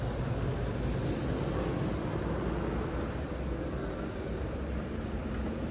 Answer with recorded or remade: recorded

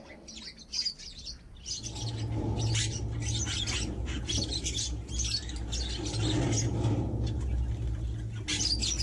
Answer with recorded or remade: recorded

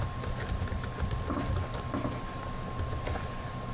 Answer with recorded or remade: recorded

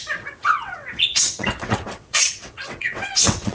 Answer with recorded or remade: remade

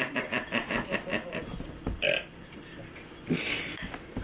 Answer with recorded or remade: remade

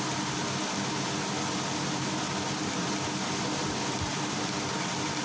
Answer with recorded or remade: recorded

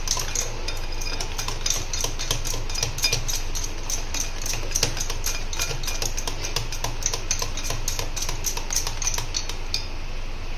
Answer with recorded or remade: recorded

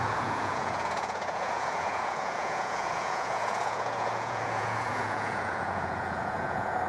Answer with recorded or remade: remade